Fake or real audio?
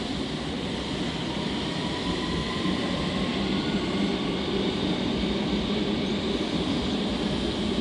real